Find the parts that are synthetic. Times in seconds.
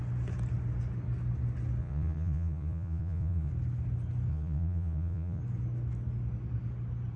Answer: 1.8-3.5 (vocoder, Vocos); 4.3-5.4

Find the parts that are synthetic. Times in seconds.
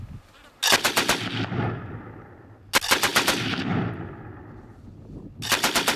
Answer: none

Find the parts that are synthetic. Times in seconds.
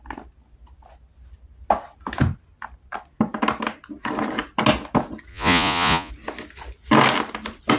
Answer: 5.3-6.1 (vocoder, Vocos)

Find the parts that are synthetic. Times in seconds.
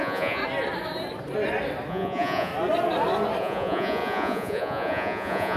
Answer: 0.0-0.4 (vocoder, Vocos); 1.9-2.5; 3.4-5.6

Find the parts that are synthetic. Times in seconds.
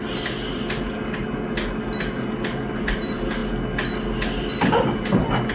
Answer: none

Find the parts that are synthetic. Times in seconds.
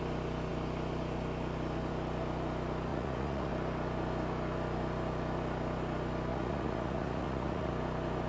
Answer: 2.9-3.5 (vocoder, Vocos); 6.3-7.7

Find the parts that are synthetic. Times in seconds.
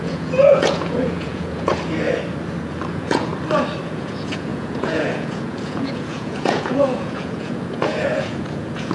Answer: 0.0-1.7 (vocoder, Vocos); 2.9-3.3; 3.9-8.9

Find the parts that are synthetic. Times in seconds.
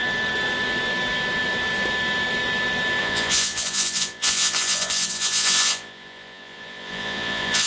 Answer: 3.0-7.7 (vocoder, Vocos)